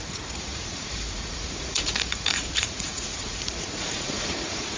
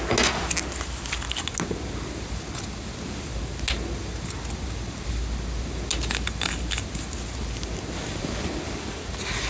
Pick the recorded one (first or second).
second